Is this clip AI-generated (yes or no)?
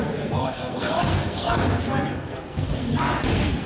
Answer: yes